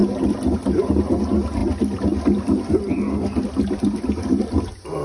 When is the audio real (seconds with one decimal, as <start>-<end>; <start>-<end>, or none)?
0.0-5.0